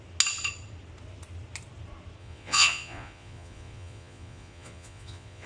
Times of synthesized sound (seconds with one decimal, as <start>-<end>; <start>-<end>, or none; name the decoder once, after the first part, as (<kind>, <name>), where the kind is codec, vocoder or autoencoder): 2.2-5.5 (vocoder, Vocos)